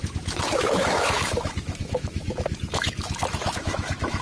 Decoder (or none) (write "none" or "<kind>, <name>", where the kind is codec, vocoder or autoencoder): autoencoder, DAC-VAE